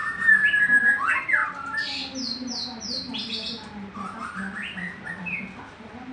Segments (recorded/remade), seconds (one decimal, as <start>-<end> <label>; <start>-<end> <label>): 0.0-6.1 recorded